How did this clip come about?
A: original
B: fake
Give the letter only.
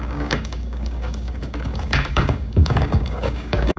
B